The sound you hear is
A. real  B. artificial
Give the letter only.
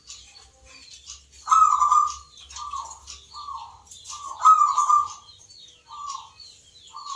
A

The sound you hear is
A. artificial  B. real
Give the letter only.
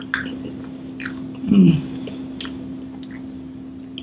B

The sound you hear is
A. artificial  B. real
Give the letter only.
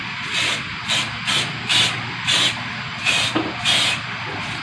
B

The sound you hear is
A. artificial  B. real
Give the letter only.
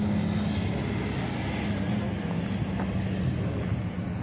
B